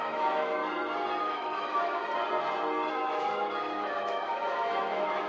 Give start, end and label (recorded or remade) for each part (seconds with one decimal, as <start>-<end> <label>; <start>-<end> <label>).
0.0-0.6 remade; 0.6-1.2 recorded; 1.2-2.0 remade; 2.0-2.9 recorded; 2.9-5.3 remade